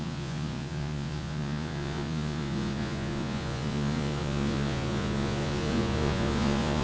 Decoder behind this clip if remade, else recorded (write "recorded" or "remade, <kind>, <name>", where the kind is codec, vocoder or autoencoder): remade, vocoder, Vocos